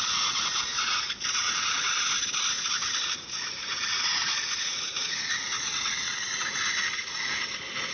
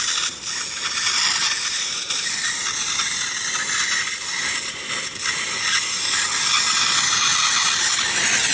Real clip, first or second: second